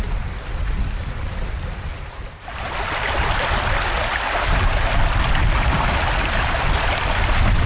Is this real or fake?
real